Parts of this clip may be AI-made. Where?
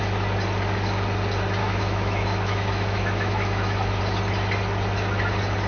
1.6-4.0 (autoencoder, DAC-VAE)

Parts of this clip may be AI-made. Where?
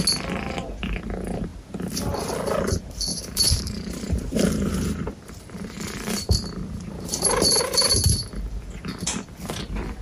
3.1-7.6 (vocoder, BigVGAN v2)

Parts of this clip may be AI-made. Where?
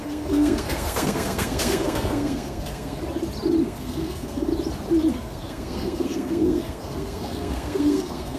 0.0-3.0 (codec, SNAC); 3.6-4.5; 5.1-8.4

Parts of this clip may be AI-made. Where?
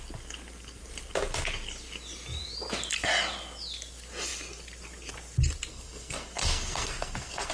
5.7-7.5 (codec, SNAC)